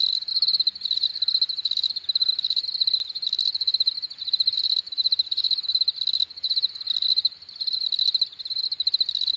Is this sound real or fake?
real